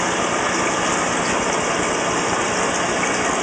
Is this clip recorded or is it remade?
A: recorded